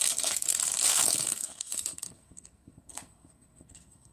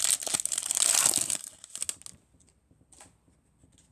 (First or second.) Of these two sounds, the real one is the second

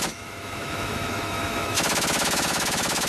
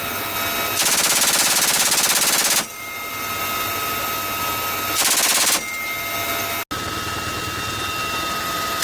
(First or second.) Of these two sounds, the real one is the second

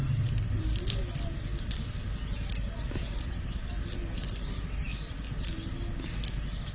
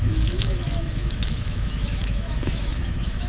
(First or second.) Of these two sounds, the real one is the first